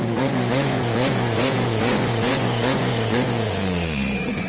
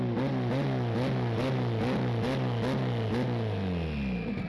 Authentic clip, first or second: second